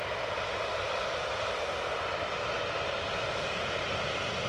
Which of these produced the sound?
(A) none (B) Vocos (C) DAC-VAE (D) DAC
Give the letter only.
A